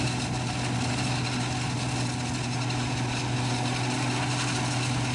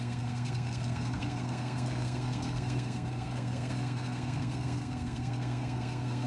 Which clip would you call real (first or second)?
first